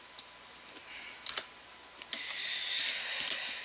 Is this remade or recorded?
recorded